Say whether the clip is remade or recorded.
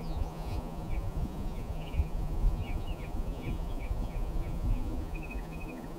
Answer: remade